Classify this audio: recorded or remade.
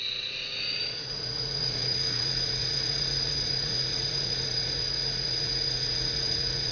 remade